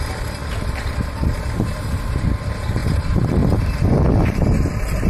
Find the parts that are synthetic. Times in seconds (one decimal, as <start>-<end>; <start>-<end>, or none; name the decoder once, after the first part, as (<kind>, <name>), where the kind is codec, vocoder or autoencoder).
2.8-3.3 (vocoder, BigVGAN v2)